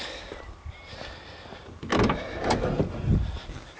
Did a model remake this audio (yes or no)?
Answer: no